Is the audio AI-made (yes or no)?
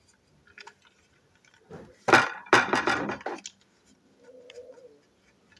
no